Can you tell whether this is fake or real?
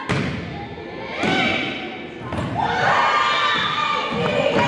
real